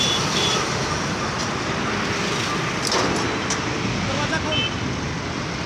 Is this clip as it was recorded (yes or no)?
yes